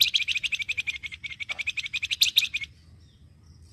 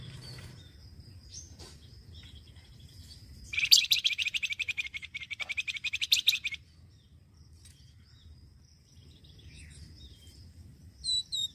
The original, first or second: first